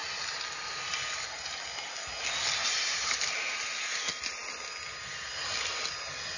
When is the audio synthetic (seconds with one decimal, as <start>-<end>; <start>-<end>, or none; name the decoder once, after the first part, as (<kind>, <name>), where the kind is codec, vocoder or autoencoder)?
none

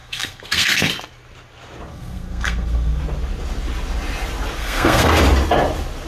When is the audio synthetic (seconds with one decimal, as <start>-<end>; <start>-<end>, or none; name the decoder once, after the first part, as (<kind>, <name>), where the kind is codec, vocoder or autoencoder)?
0.0-0.9 (codec, SNAC); 1.9-3.0; 4.6-5.1

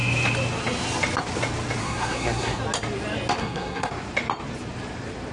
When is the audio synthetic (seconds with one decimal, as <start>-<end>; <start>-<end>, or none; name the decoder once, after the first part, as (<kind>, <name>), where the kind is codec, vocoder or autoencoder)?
1.8-2.6 (codec, SNAC); 3.4-3.9

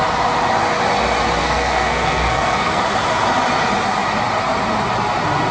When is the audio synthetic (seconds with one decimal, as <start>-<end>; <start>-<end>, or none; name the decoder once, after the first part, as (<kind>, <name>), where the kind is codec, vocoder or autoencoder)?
1.4-2.8 (codec, SNAC)

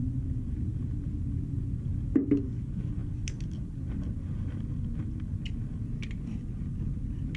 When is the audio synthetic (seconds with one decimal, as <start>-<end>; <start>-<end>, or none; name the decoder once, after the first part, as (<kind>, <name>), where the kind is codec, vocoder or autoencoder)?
none

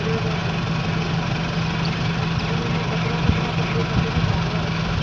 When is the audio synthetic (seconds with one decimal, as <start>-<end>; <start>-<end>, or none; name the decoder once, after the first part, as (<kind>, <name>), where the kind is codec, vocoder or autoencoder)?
none